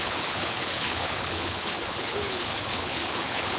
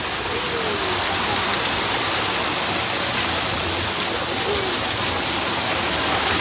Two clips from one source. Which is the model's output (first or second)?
first